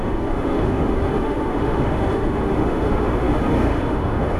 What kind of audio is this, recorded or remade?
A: remade